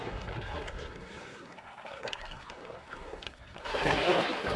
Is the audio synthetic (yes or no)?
yes